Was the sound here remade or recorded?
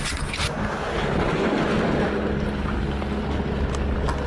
recorded